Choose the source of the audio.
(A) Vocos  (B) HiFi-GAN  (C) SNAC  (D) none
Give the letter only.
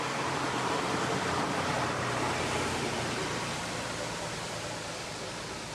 D